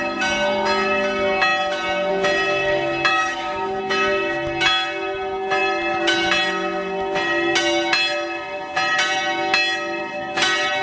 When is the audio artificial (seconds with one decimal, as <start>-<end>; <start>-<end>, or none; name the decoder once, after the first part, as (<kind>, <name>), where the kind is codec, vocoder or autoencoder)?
3.1-3.8 (codec, DAC)